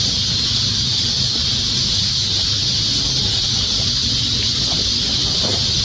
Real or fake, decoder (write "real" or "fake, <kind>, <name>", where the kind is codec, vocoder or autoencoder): real